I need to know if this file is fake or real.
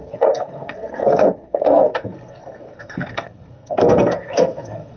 fake